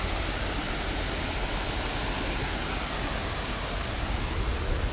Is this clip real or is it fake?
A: real